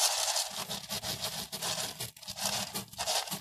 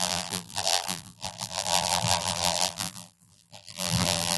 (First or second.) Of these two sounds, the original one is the first